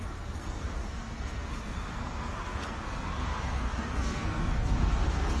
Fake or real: fake